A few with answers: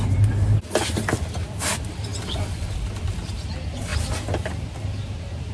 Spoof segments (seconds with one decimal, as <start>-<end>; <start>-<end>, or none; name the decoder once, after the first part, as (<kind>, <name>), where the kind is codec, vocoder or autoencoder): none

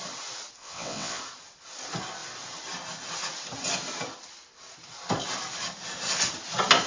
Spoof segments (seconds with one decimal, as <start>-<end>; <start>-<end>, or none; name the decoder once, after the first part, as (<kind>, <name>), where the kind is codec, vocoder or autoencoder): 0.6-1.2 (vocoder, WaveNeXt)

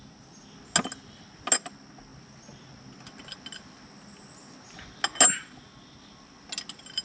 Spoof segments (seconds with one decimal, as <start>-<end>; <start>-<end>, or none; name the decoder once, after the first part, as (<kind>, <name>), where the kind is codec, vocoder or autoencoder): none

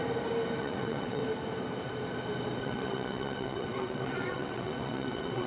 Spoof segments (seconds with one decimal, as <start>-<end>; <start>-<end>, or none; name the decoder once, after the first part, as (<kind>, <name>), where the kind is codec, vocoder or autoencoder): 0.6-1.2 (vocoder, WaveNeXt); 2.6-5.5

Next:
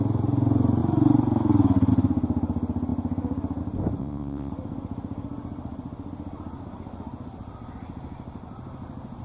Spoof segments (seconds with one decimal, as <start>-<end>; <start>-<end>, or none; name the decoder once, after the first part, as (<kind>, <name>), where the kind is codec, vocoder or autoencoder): 4.0-4.5 (vocoder, WaveNeXt)